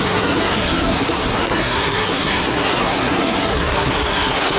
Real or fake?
fake